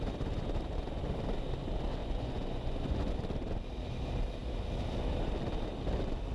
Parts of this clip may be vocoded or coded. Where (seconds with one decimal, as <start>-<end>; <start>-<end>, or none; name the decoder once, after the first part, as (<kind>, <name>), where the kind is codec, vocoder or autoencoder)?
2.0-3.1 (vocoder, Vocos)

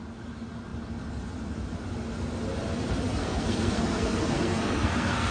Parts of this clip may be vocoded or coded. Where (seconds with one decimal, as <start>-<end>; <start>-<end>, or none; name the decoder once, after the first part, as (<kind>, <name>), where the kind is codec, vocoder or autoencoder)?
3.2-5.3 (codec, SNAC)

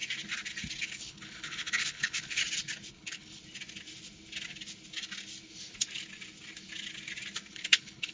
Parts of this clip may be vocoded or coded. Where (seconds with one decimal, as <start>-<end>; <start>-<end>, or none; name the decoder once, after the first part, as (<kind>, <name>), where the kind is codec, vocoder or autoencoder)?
0.8-2.4 (codec, HILCodec); 2.9-3.4; 7.5-8.1

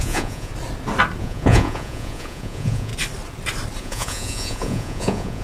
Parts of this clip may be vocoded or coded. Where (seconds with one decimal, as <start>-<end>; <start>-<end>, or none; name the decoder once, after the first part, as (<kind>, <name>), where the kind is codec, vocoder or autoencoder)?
0.0-0.5 (vocoder, Vocos); 1.2-2.9; 3.8-5.4

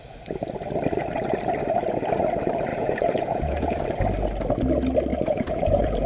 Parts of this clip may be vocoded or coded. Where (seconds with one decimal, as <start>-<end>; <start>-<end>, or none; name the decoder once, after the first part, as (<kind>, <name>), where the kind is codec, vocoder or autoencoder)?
2.7-3.8 (vocoder, Vocos); 5.1-6.1